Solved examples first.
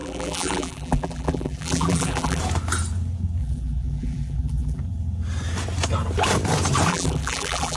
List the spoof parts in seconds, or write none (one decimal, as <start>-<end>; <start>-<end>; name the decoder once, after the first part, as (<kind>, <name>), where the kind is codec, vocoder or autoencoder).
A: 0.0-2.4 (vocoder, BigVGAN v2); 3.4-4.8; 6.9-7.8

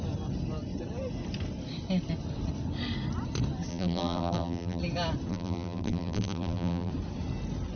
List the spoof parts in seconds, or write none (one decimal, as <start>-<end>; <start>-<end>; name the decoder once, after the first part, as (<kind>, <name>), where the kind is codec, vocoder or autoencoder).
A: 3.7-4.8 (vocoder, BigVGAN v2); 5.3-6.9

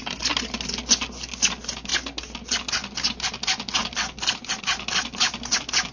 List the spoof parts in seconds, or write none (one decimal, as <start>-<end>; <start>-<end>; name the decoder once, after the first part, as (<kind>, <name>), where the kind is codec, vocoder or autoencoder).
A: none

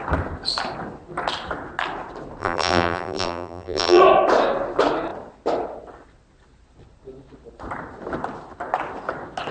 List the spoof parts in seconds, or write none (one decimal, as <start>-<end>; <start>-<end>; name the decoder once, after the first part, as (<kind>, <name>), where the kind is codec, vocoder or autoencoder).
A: 2.4-4.0 (vocoder, BigVGAN v2)